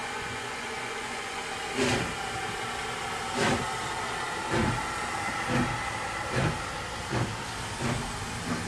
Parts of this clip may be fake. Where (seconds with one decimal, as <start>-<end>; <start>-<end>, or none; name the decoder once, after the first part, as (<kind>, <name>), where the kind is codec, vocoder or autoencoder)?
0.0-1.4 (vocoder, Vocos)